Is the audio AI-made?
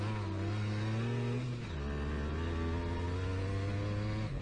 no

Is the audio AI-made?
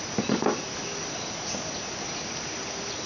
no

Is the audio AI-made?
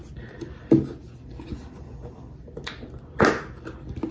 no